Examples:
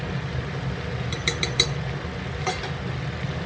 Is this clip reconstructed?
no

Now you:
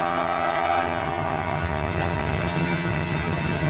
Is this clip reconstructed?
yes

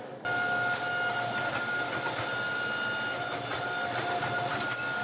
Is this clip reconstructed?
no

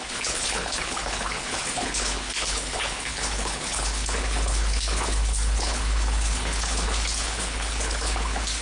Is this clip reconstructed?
yes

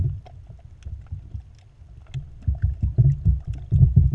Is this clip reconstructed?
no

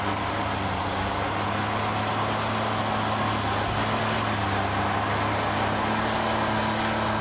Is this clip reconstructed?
no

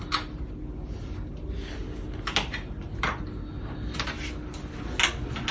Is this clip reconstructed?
no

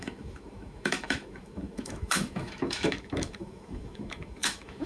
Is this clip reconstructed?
yes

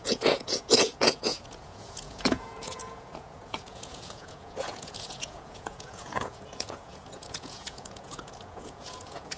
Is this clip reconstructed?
yes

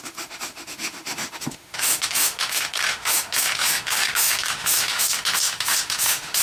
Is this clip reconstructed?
yes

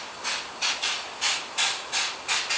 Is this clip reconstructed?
no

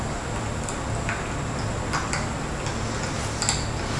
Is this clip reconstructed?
no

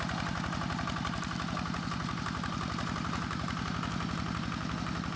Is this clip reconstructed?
no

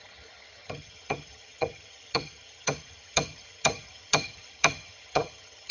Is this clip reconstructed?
yes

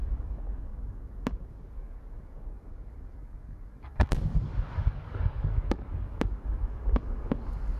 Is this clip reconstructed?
yes